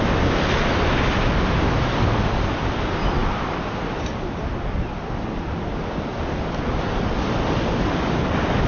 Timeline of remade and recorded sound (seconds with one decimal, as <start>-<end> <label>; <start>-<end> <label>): 0.0-8.7 recorded